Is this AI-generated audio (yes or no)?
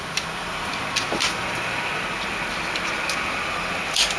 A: no